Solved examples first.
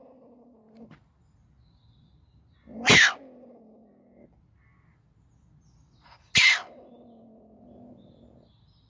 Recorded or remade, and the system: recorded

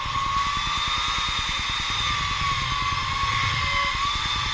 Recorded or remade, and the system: recorded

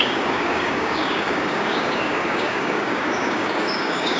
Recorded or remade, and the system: remade, codec, DAC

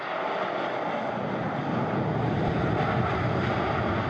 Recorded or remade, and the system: recorded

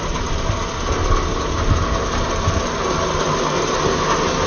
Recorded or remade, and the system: recorded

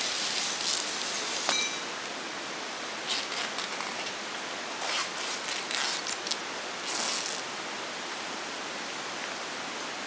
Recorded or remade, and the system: recorded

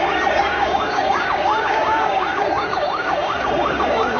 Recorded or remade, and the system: remade, codec, DAC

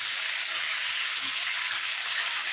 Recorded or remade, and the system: remade, codec, DAC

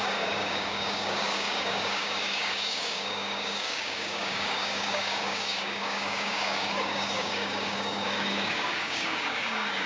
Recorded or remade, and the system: remade, codec, DAC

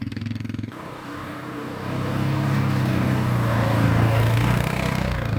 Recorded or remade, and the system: remade, codec, DAC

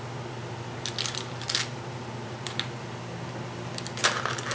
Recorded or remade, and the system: recorded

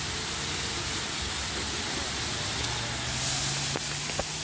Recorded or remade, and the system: recorded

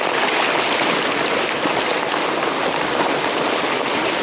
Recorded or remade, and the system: recorded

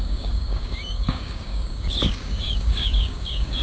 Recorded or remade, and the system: remade, codec, DAC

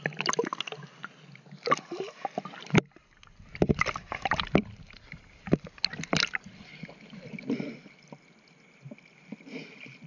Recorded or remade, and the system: recorded